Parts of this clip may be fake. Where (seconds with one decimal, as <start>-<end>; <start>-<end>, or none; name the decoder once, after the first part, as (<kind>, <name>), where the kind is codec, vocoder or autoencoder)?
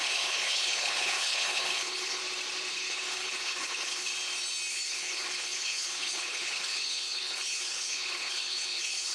0.0-2.2 (codec, HILCodec); 2.7-4.1; 4.7-9.1